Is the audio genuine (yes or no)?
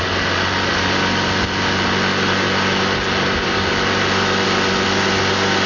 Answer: yes